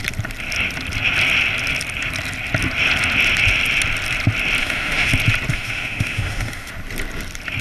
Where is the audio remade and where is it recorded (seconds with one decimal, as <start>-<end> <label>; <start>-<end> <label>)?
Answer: 0.0-4.6 recorded; 4.6-5.1 remade; 5.1-5.5 recorded; 5.5-6.7 remade; 6.7-7.6 recorded